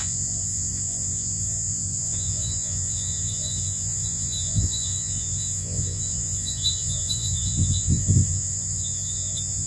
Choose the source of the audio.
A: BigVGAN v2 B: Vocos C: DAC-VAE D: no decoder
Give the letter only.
B